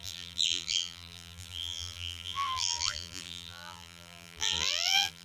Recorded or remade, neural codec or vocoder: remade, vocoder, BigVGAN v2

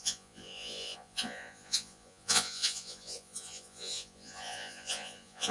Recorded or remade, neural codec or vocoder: remade, vocoder, Vocos